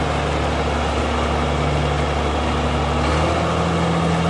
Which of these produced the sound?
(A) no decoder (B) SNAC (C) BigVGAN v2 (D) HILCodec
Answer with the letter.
A